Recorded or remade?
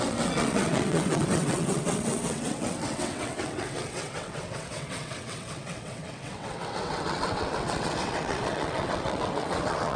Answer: remade